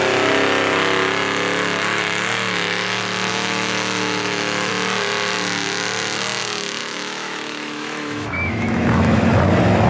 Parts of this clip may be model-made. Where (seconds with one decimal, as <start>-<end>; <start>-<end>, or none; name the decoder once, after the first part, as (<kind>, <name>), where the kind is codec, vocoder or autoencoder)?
3.3-4.7 (autoencoder, DAC-VAE); 6.8-9.3